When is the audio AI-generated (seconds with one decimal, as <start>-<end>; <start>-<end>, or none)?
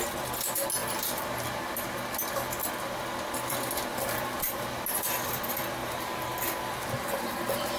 0.8-2.0; 3.9-4.8; 5.8-7.8